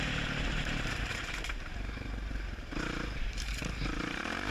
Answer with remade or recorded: remade